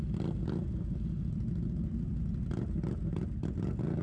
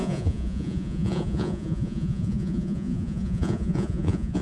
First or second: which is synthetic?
second